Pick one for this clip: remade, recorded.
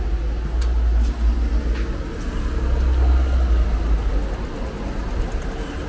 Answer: recorded